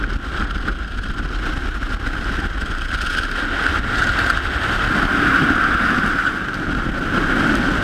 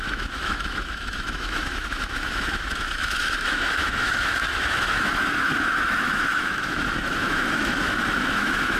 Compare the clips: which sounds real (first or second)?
first